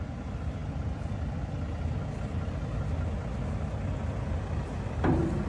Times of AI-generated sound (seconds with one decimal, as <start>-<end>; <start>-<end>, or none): none